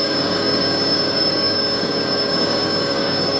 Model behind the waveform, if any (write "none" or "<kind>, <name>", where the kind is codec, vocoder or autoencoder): codec, DAC